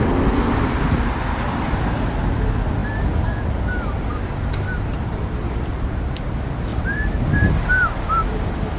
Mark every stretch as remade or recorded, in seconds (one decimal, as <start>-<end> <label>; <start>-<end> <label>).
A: 0.0-6.7 recorded; 6.7-7.9 remade; 7.9-8.8 recorded